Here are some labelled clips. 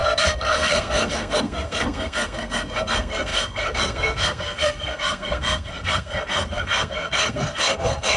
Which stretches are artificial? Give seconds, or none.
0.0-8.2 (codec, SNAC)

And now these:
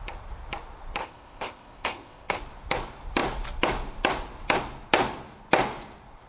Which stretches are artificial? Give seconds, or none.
1.0-2.4 (codec, ZipCodec)

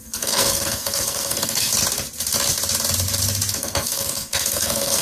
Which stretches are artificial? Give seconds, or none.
0.0-1.7 (codec, SNAC); 3.5-5.0

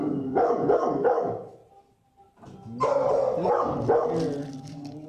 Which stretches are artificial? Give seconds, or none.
0.0-1.6 (codec, DAC); 4.6-5.1

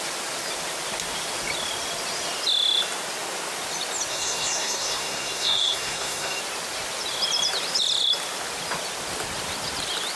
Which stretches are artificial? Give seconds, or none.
4.1-6.4 (codec, SNAC)

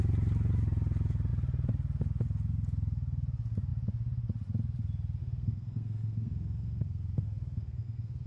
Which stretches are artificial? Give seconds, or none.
5.2-8.3 (codec, SNAC)